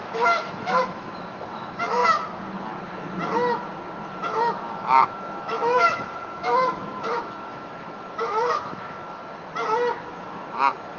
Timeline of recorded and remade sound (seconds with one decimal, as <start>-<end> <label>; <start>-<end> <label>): 0.0-2.0 remade; 2.0-4.1 recorded; 4.1-9.2 remade; 9.2-10.0 recorded; 10.0-11.0 remade